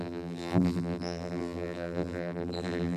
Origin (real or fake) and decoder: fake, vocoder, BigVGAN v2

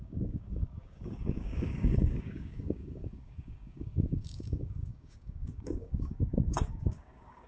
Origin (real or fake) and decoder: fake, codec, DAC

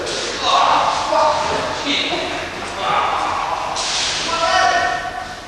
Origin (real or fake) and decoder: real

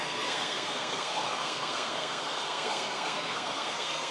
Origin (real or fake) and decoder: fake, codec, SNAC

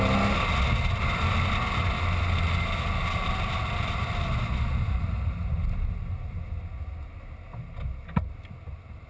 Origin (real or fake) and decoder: real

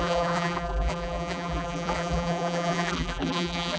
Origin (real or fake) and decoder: fake, vocoder, BigVGAN v2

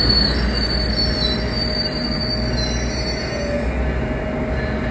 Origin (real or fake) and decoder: real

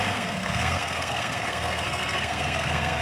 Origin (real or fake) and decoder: fake, codec, SNAC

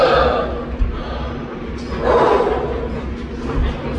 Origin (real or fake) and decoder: real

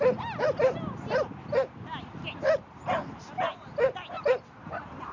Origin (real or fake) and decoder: real